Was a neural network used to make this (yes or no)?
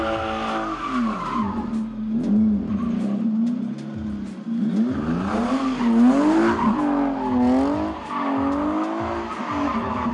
no